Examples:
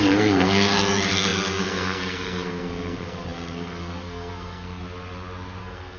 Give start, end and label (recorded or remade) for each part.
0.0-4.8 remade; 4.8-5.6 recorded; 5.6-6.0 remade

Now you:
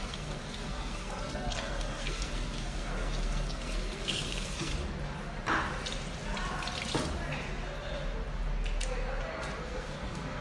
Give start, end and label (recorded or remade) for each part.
0.0-4.7 remade; 4.7-9.6 recorded; 9.6-10.4 remade